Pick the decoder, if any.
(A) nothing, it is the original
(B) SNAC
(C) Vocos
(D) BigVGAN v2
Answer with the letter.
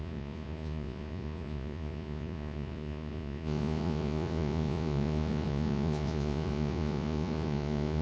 C